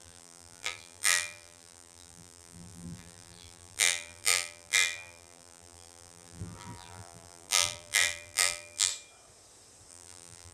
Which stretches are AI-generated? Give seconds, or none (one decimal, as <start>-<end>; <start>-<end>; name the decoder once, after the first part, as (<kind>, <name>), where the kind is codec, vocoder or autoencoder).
0.0-8.9 (vocoder, BigVGAN v2); 9.9-10.5